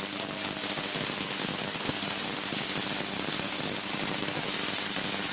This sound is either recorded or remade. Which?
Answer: recorded